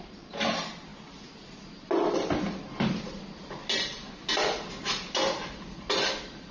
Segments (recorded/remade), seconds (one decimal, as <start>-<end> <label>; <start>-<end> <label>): 0.0-6.5 recorded